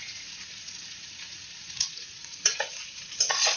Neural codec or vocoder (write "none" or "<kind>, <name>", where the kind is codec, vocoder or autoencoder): vocoder, Vocos